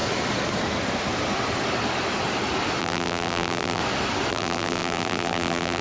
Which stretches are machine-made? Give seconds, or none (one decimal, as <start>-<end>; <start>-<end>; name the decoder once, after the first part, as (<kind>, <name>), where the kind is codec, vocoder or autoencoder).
2.8-3.8 (vocoder, BigVGAN v2); 4.3-5.8

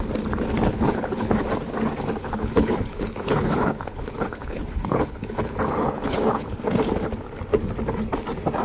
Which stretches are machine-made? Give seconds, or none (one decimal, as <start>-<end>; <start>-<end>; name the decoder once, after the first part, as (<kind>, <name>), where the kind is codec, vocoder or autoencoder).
0.7-1.4 (codec, HILCodec); 2.2-6.6

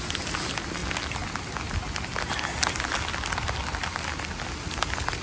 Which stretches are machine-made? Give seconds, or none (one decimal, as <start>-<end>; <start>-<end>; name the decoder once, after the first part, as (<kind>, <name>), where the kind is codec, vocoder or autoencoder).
none

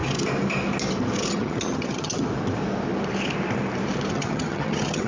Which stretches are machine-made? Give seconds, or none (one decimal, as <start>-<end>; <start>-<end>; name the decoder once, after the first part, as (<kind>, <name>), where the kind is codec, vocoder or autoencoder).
1.2-2.3 (vocoder, HiFi-GAN); 4.1-5.1

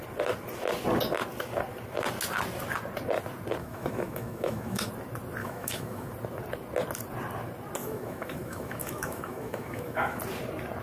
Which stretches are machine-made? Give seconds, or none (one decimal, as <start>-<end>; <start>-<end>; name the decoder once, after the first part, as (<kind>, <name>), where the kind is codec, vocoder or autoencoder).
3.6-4.9 (autoencoder, DAC-VAE); 5.4-6.1; 7.8-10.2

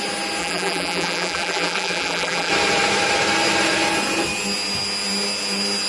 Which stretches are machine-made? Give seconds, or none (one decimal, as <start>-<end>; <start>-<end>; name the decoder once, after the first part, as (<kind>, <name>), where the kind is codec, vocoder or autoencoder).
0.4-2.5 (vocoder, BigVGAN v2)

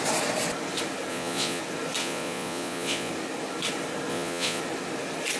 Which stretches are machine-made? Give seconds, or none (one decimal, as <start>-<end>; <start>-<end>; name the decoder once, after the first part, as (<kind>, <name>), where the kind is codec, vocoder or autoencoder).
1.1-1.6 (vocoder, Vocos); 2.0-3.1; 4.1-4.6

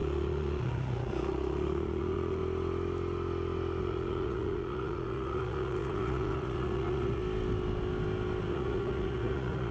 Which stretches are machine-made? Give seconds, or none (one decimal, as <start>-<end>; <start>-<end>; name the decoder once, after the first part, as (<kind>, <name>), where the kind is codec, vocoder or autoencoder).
0.0-2.4 (vocoder, Vocos); 3.8-7.2; 8.5-9.7